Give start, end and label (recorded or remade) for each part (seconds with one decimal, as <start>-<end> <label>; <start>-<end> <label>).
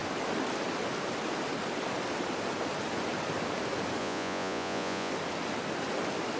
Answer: 0.0-4.0 recorded; 4.0-5.1 remade; 5.1-6.4 recorded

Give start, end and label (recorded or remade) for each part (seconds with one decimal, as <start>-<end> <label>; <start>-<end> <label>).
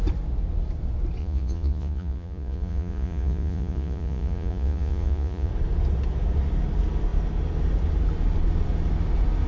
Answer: 0.0-1.2 recorded; 1.2-5.5 remade; 5.5-9.5 recorded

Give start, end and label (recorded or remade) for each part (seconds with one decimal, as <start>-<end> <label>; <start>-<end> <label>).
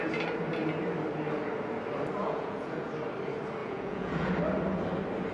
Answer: 0.0-2.2 recorded; 2.2-2.9 remade; 2.9-3.6 recorded; 3.6-4.3 remade; 4.3-5.3 recorded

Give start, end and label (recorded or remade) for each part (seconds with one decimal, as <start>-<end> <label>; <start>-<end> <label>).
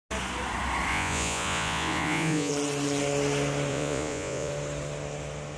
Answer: 0.0-0.9 recorded; 0.9-2.5 remade; 2.5-3.7 recorded; 3.7-4.5 remade; 4.5-5.6 recorded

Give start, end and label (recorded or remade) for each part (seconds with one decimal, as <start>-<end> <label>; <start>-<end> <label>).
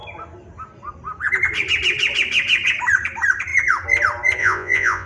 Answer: 0.0-4.4 recorded; 4.4-5.1 remade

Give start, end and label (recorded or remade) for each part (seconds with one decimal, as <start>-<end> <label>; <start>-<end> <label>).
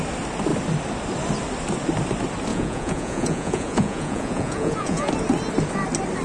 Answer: 0.0-2.5 recorded; 2.5-5.1 remade; 5.1-6.2 recorded